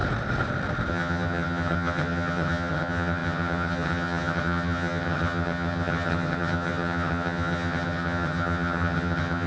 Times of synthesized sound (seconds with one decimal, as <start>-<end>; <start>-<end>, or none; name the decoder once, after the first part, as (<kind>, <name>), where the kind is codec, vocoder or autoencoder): 0.9-9.5 (vocoder, HiFi-GAN)